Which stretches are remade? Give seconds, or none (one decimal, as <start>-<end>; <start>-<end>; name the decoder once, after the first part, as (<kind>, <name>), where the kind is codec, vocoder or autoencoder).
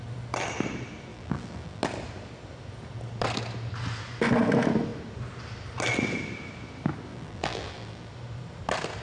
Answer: 1.1-1.8 (vocoder, BigVGAN v2); 7.1-8.1